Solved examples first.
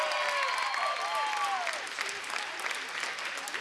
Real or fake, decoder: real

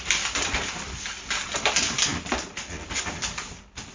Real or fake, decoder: real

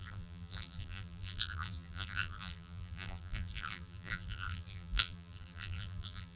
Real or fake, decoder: fake, vocoder, BigVGAN v2